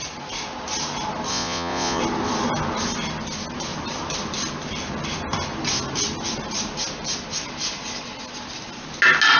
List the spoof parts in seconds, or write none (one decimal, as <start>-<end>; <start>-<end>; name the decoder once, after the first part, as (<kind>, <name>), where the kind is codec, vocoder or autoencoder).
1.3-2.0 (vocoder, Vocos)